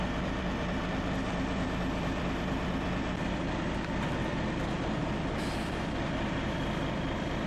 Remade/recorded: remade